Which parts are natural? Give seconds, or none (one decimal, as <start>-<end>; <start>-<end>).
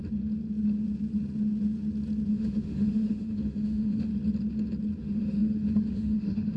0.0-2.3; 4.1-5.0